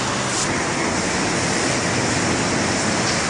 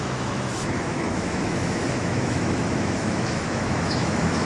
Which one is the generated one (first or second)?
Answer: second